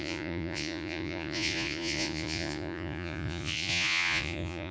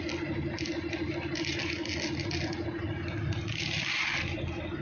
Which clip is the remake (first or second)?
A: first